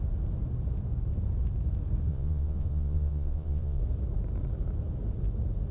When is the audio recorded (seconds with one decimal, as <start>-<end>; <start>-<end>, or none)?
0.0-2.1; 3.8-5.7